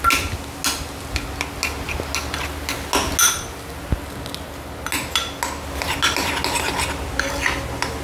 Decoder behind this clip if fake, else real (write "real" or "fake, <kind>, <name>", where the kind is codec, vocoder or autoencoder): real